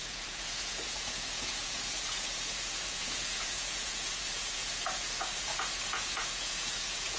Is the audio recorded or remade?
remade